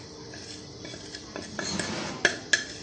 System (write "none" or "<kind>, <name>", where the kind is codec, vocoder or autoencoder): none